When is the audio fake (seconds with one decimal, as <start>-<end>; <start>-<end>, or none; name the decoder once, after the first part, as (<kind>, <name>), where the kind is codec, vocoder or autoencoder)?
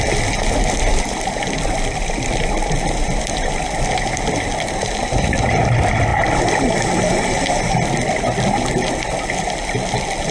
none